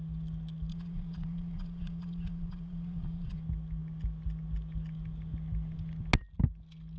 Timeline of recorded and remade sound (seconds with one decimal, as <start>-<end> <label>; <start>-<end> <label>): 0.0-0.7 recorded; 0.7-3.4 remade; 3.4-7.0 recorded